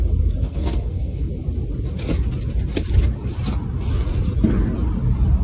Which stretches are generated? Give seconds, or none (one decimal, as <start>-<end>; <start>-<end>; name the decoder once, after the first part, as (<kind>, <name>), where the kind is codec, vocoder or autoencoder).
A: 0.4-1.3 (codec, SNAC)

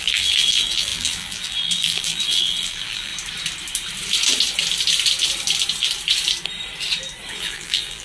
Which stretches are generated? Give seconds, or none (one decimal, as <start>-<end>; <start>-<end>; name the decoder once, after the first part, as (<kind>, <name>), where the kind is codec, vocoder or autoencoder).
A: 0.0-3.1 (vocoder, BigVGAN v2); 7.3-8.0